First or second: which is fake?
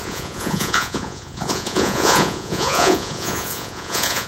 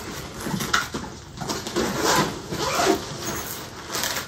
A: first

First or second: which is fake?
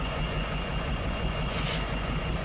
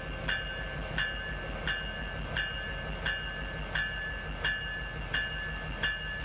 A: first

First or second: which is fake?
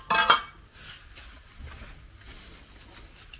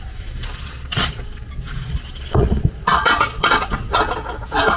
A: second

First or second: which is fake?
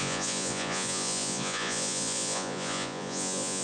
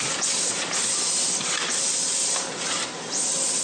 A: first